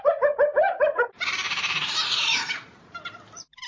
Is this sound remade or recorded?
remade